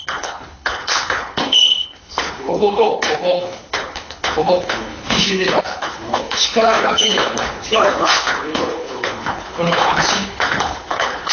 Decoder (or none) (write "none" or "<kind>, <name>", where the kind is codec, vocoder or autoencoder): codec, HILCodec